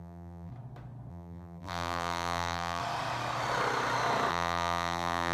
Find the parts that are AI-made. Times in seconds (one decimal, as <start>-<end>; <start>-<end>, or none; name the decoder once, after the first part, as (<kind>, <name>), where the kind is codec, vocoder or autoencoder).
0.0-0.5 (vocoder, BigVGAN v2); 1.1-2.8; 4.3-5.3